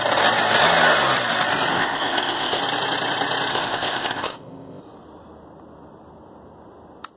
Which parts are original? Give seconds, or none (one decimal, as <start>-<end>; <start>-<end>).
0.0-1.7; 2.6-3.5; 4.8-7.2